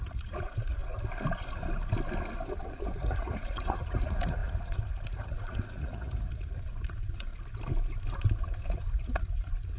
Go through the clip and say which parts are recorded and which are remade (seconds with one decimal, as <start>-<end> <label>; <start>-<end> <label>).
0.0-0.8 remade; 0.8-2.5 recorded; 2.5-7.3 remade; 7.3-8.4 recorded; 8.4-9.8 remade